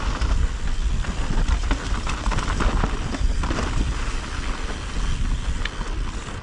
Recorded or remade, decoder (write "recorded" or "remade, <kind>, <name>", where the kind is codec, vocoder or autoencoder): recorded